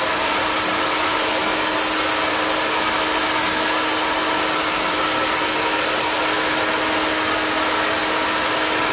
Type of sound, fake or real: real